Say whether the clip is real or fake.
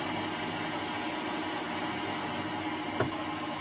real